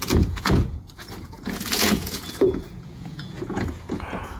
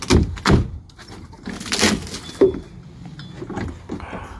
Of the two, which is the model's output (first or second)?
first